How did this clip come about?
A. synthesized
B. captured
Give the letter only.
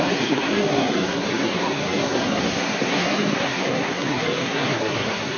A